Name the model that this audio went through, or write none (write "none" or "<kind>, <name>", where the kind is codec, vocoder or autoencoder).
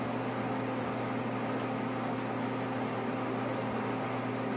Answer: none